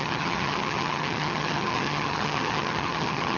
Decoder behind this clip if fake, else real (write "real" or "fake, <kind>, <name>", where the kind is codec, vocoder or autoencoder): fake, vocoder, HiFi-GAN